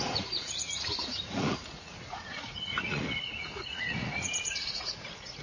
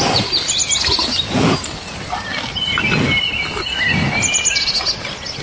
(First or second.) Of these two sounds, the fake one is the first